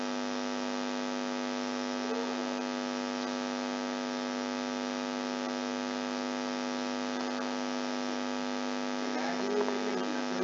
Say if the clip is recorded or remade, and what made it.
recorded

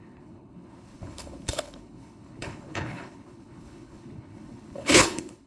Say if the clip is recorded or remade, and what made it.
remade, codec, HILCodec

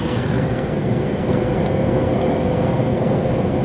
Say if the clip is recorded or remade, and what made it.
remade, codec, SNAC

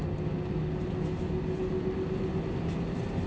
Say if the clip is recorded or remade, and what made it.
recorded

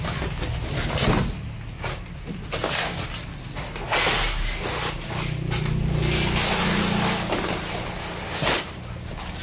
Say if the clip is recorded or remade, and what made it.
recorded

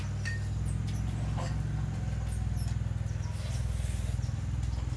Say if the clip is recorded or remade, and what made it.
recorded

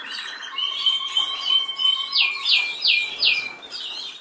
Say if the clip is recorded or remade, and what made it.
recorded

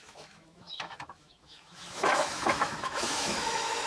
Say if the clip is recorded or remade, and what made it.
remade, autoencoder, DAC-VAE